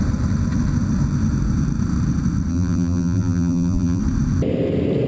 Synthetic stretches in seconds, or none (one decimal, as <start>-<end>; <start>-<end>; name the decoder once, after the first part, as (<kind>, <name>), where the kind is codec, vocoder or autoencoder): 2.5-4.0 (vocoder, BigVGAN v2)